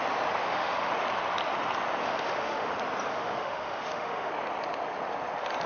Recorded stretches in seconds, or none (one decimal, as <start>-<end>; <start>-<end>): 0.0-0.4; 0.9-2.0; 2.7-3.1; 4.3-5.7

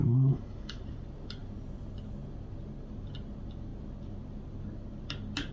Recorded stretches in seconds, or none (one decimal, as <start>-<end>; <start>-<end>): 0.8-5.5

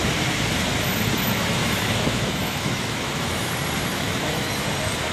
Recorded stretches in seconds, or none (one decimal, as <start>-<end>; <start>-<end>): 0.0-1.6; 3.5-3.9; 4.5-5.1

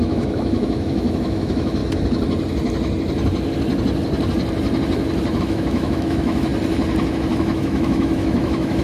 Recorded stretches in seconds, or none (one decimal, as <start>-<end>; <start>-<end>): 1.8-5.4; 6.5-7.1

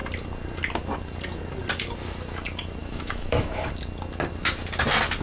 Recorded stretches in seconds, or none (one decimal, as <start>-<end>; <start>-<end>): 0.0-2.8; 3.7-5.2

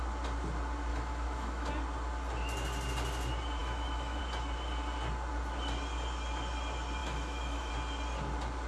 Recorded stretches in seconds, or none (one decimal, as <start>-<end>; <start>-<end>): 0.0-0.9; 1.7-3.6; 4.2-7.0; 7.7-8.7

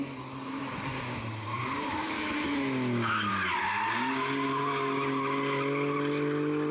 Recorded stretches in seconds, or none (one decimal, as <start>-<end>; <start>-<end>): 0.0-2.0; 3.3-6.7

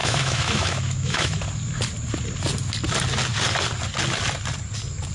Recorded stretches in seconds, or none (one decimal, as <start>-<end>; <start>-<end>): 1.4-5.1